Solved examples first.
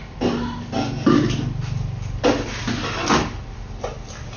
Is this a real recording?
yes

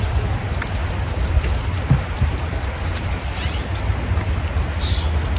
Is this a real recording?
yes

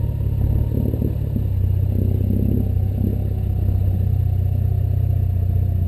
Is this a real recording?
yes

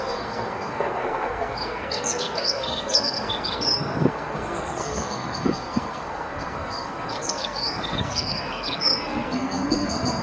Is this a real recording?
no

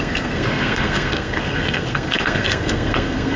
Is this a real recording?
no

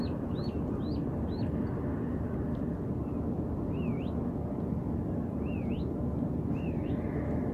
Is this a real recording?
yes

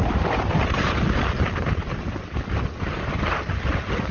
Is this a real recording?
yes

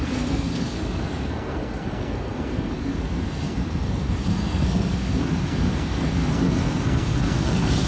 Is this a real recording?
no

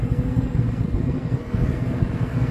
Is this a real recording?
no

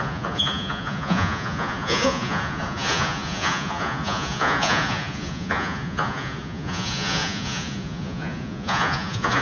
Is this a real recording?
no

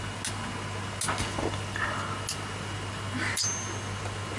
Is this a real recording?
yes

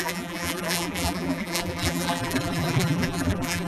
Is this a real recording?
no